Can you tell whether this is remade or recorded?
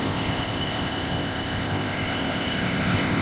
remade